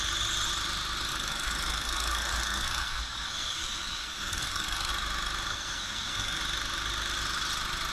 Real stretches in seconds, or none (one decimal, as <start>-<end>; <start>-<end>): 0.0-1.1; 4.9-5.5; 6.4-7.9